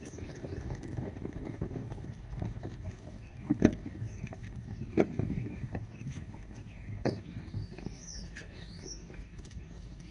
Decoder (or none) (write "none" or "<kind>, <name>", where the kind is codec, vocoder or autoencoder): codec, DAC